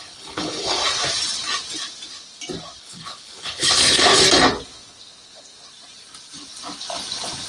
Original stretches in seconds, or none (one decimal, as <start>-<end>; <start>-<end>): 0.8-2.8; 4.1-7.5